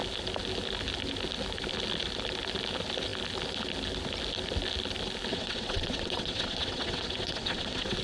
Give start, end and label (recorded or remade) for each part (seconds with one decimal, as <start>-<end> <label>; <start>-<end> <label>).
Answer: 0.0-5.3 recorded; 5.3-8.0 remade